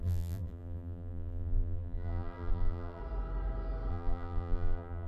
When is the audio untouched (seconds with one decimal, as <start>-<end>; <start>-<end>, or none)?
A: 3.0-3.9